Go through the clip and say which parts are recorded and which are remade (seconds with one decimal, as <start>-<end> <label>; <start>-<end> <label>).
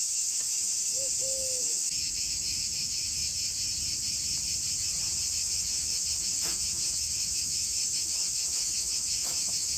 0.0-3.2 remade; 3.2-5.3 recorded; 5.3-9.8 remade